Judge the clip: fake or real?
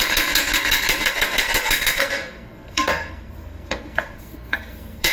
fake